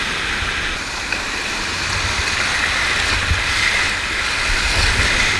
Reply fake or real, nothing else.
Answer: real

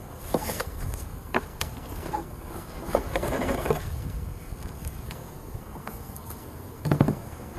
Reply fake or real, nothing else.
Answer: fake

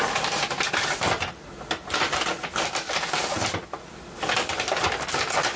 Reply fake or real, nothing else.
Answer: real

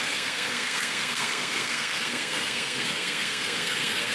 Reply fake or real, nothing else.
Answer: fake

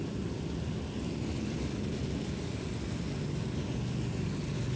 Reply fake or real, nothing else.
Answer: real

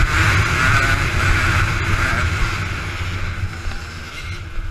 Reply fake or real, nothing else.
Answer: real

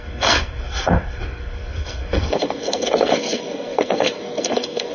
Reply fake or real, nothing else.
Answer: fake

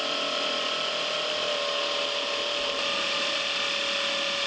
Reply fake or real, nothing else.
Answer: real